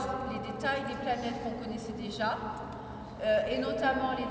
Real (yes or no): yes